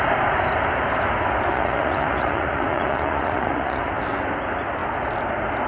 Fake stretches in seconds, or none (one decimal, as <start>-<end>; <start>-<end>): 1.5-3.9